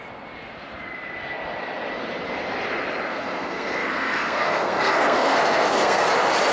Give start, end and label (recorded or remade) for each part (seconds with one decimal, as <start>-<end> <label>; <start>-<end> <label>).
0.0-3.1 recorded; 3.1-6.1 remade; 6.1-6.5 recorded